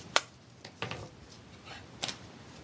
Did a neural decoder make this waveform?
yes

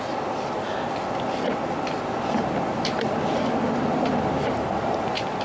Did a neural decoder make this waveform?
no